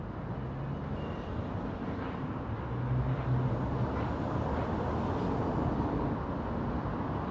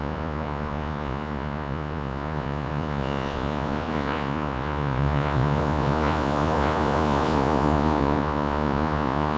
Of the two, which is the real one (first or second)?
first